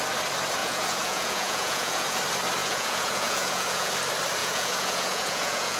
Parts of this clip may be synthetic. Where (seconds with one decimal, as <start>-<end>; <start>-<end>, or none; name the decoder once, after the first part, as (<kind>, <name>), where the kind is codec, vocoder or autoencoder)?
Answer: 0.6-2.2 (vocoder, Vocos); 2.6-3.9; 4.4-5.8